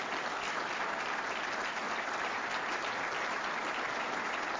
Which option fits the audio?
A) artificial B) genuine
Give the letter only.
B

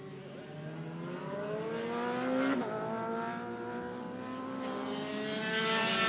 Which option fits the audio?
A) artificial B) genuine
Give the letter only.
B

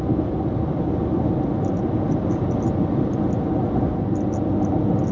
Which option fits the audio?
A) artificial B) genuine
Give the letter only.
B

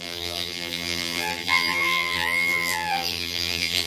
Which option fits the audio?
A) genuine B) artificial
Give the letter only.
B